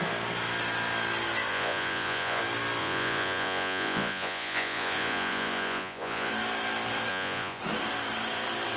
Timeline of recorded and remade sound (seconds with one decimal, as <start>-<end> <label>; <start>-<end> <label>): 0.0-1.5 recorded; 1.5-2.4 remade; 2.4-2.8 recorded; 2.8-6.3 remade; 6.3-7.1 recorded; 7.1-7.6 remade; 7.6-8.8 recorded